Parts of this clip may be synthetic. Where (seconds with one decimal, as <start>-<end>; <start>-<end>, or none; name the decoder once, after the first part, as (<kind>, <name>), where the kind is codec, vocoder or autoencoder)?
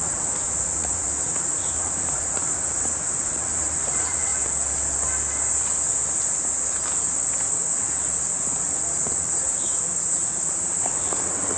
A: 0.0-4.3 (vocoder, Vocos); 9.2-11.6